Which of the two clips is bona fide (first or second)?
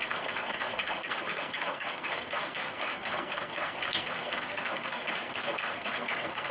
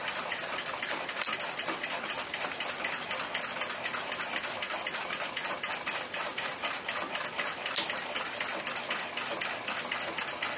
second